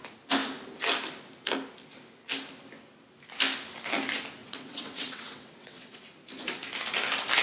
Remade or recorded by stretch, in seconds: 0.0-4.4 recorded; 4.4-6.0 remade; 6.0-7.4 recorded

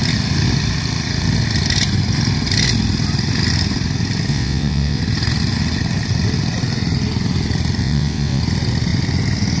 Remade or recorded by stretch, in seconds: 0.0-4.3 recorded; 4.3-5.0 remade; 5.0-7.8 recorded; 7.8-8.4 remade; 8.4-9.6 recorded

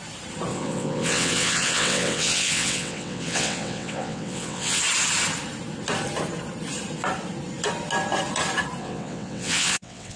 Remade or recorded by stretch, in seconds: 0.0-0.5 recorded; 0.5-4.8 remade; 4.8-8.8 recorded; 8.8-10.2 remade

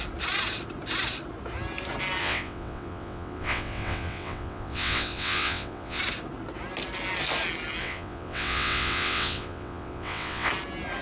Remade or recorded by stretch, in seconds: 0.0-2.2 recorded; 2.2-6.0 remade; 6.0-7.8 recorded; 7.8-10.5 remade; 10.5-11.0 recorded

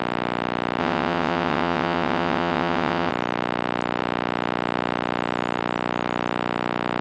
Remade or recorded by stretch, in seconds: 0.0-0.8 recorded; 0.8-3.1 remade; 3.1-7.0 recorded

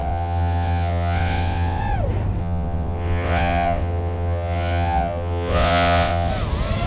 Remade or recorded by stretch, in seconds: 0.0-1.8 remade; 1.8-2.4 recorded; 2.4-6.3 remade; 6.3-6.9 recorded

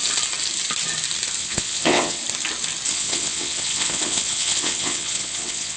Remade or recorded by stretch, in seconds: 0.0-1.4 recorded; 1.4-2.2 remade; 2.2-2.9 recorded; 2.9-5.8 remade